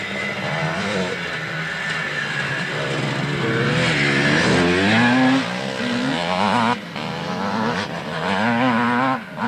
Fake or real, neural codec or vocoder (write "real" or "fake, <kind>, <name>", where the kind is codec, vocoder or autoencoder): real